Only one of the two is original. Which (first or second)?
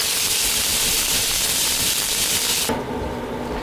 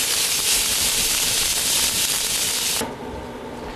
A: first